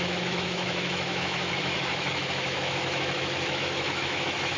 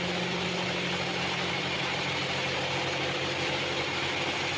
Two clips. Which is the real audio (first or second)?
second